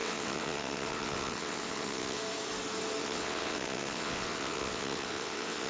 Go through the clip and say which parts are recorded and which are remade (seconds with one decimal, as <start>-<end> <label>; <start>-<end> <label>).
0.0-2.2 remade; 2.2-3.0 recorded; 3.0-5.7 remade